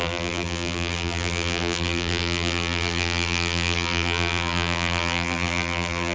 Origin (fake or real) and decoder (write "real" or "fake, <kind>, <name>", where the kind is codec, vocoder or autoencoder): fake, vocoder, BigVGAN v2